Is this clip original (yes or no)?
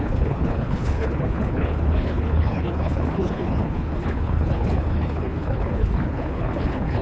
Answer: no